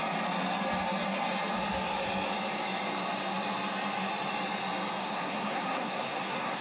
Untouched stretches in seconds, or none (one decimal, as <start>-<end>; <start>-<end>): 0.0-5.0

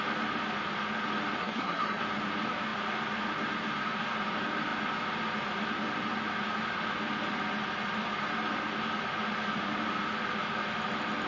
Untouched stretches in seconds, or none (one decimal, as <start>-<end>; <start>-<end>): 0.0-1.4; 2.0-11.3